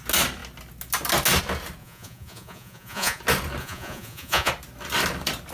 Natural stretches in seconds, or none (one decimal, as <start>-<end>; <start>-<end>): 0.0-1.8; 3.2-3.6; 4.5-5.5